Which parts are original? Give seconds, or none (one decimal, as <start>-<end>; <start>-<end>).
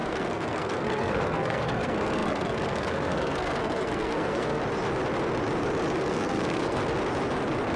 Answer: 4.6-6.1; 6.8-7.8